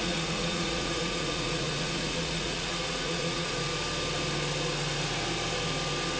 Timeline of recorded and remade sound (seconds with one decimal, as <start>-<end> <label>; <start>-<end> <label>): 0.0-3.6 remade; 3.6-6.2 recorded